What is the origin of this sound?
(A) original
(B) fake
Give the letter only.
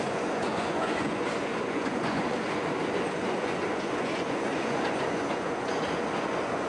B